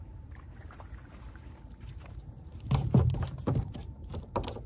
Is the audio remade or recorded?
remade